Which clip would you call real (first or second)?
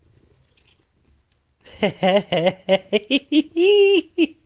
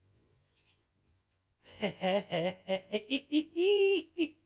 first